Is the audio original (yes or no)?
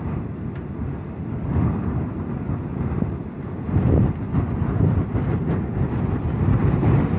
yes